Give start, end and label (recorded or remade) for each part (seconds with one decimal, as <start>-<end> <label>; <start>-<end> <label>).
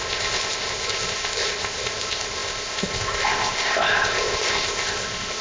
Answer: 0.0-5.4 remade